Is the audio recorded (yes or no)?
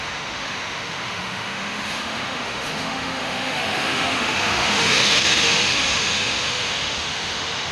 no